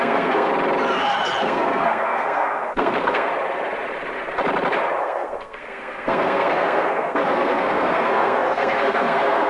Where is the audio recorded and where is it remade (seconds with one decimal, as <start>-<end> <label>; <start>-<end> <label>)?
0.0-0.5 remade; 0.5-1.4 recorded; 1.4-3.3 remade; 3.3-5.0 recorded; 5.0-9.5 remade